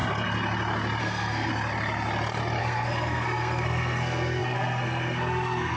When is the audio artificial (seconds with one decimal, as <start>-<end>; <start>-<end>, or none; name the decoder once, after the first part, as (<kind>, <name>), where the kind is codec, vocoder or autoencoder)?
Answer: 1.0-1.5 (codec, SNAC); 2.6-5.8